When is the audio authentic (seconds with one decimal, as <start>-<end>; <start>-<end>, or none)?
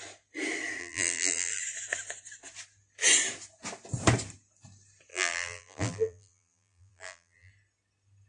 0.0-0.8; 1.6-5.1; 7.5-8.3